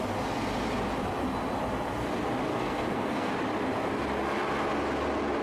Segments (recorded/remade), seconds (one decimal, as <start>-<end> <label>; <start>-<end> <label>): 0.0-2.5 recorded; 2.5-3.3 remade; 3.3-5.4 recorded